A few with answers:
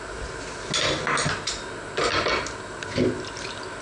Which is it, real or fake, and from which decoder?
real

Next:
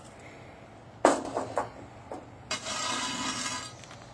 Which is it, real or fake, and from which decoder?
real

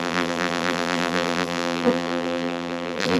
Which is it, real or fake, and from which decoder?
fake, vocoder, BigVGAN v2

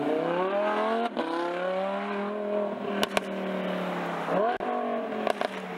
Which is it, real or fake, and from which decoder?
real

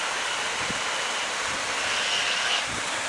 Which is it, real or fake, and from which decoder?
real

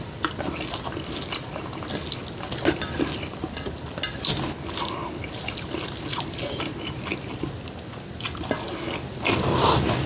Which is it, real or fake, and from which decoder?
real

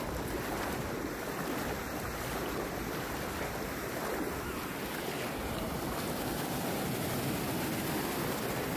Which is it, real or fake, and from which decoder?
real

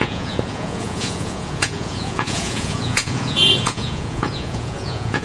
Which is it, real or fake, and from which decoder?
fake, vocoder, Vocos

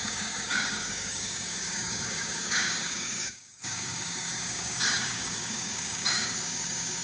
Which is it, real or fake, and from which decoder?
fake, codec, DAC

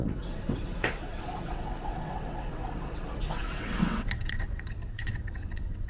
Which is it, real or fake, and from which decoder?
fake, vocoder, WaveNeXt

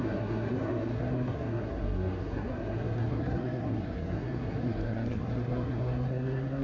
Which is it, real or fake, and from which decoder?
fake, codec, SNAC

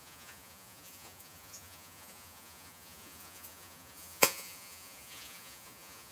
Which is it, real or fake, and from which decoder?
fake, vocoder, Vocos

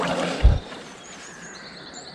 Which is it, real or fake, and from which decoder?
fake, vocoder, BigVGAN v2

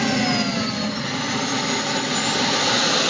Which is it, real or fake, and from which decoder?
real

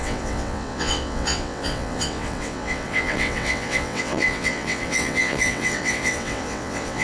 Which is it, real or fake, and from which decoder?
fake, vocoder, WaveNeXt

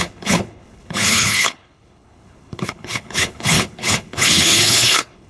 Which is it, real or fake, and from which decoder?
fake, codec, HILCodec